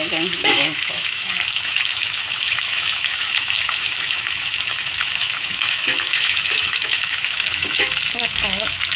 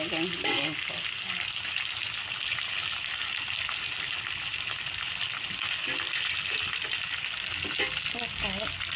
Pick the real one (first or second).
second